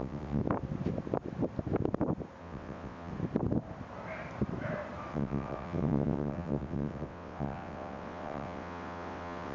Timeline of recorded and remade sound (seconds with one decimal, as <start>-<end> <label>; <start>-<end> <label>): 0.0-0.4 remade; 0.4-2.4 recorded; 2.4-3.1 remade; 3.1-5.1 recorded; 5.1-9.5 remade